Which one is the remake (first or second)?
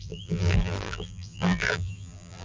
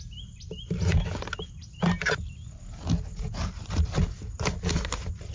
first